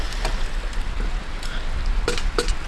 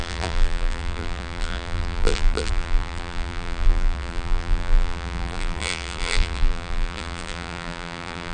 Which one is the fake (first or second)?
second